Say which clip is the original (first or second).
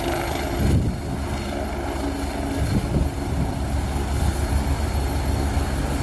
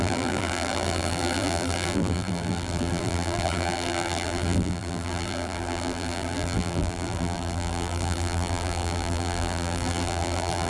first